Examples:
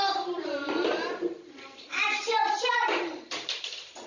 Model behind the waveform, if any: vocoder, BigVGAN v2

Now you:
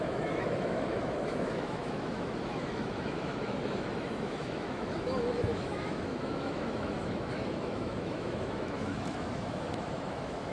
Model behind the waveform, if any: autoencoder, DAC-VAE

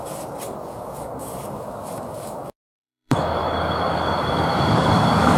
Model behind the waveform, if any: codec, DAC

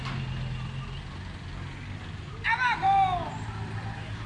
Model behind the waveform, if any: none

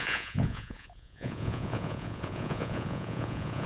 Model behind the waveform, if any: vocoder, Vocos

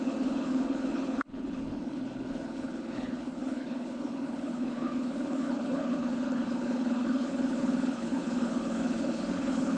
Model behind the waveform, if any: codec, HILCodec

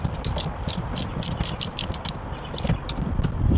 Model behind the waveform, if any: none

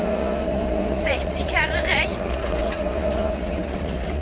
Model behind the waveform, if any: vocoder, Vocos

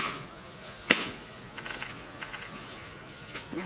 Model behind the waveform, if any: vocoder, Vocos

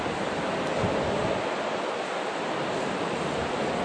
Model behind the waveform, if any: none